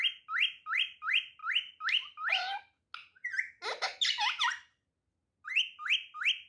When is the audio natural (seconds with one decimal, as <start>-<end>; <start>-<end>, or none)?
0.0-6.5